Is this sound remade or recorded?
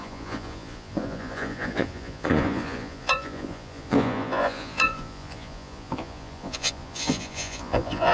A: remade